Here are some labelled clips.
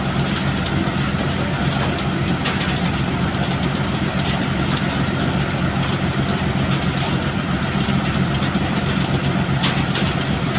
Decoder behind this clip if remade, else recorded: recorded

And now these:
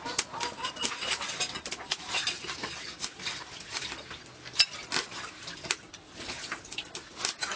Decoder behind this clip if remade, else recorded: recorded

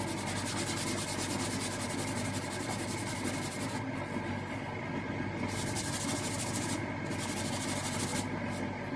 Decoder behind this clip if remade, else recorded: recorded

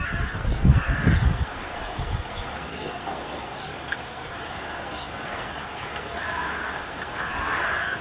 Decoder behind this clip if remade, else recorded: remade, codec, SNAC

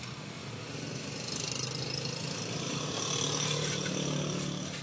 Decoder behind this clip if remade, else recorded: recorded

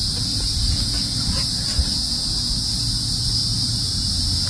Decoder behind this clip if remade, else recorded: recorded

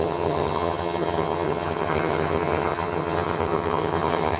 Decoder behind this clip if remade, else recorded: remade, vocoder, HiFi-GAN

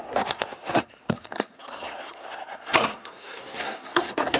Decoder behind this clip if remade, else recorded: remade, codec, SNAC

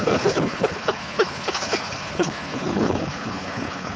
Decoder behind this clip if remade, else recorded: remade, codec, HILCodec